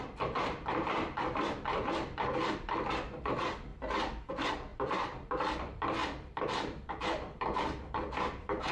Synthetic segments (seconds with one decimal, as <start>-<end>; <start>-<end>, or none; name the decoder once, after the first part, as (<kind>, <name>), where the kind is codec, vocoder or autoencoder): 0.0-3.7 (vocoder, BigVGAN v2); 4.3-8.7